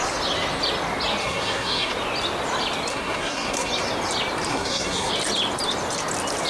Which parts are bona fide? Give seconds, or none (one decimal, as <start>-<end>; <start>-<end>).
0.0-1.2; 1.9-2.9; 3.7-4.5; 5.1-6.5